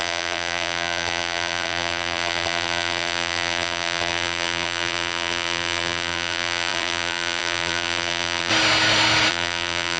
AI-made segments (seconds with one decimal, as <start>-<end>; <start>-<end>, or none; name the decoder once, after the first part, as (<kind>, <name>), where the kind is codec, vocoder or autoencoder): 0.0-8.5 (vocoder, BigVGAN v2); 9.3-10.0